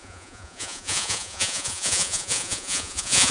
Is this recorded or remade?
remade